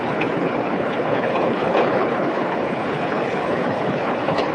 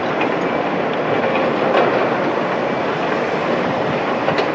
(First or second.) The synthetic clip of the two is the first